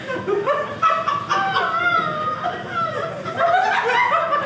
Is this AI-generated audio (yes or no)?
no